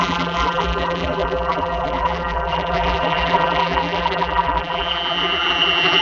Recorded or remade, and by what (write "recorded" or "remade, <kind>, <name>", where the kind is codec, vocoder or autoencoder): remade, vocoder, BigVGAN v2